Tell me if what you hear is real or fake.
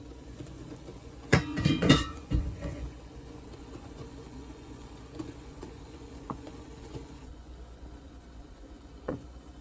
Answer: fake